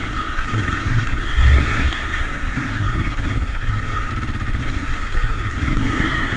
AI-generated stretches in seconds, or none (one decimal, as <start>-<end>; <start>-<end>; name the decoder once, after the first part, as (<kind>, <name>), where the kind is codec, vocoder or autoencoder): 0.0-4.1 (codec, SNAC); 4.6-6.4